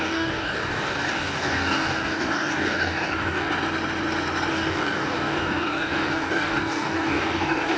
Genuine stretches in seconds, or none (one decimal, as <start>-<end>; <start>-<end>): 3.5-4.5